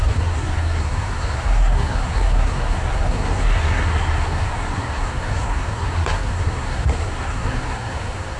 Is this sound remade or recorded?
remade